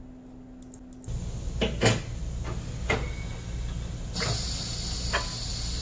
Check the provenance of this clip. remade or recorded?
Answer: recorded